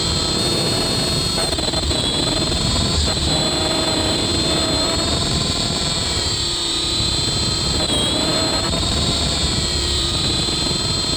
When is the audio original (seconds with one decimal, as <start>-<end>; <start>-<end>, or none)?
none